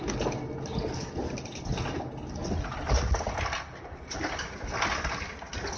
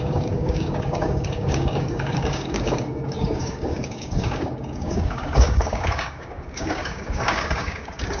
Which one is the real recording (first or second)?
first